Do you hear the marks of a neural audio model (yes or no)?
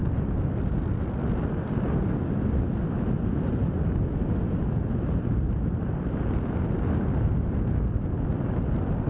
no